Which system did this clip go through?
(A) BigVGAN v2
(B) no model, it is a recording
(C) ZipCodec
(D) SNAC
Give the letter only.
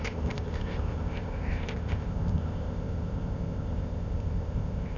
C